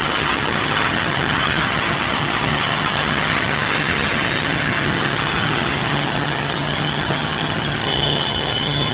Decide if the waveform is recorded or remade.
remade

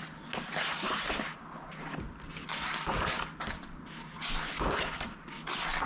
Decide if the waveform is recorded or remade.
recorded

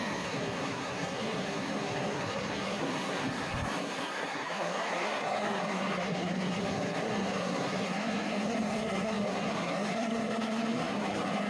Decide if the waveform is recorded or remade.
remade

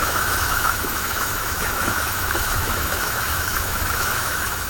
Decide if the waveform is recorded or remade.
remade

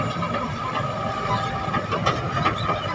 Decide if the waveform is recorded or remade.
recorded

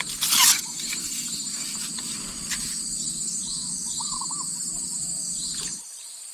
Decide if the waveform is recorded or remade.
recorded